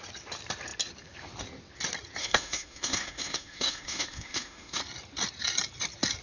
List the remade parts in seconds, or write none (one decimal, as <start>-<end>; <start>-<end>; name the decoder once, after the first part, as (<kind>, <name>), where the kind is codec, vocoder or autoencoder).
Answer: 2.2-4.8 (autoencoder, DAC-VAE)